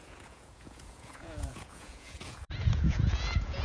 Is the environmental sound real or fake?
fake